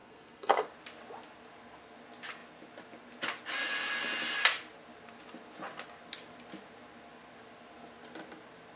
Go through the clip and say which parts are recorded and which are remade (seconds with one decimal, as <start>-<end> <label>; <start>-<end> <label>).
0.0-0.7 remade; 0.7-8.8 recorded